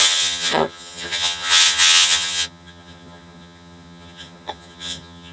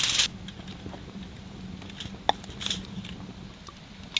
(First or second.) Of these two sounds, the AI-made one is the first